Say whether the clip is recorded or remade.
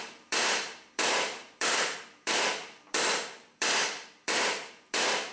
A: remade